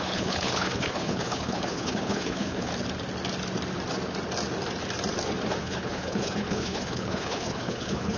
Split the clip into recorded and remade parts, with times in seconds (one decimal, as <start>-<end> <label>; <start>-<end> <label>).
0.0-2.7 remade; 2.7-5.6 recorded; 5.6-8.2 remade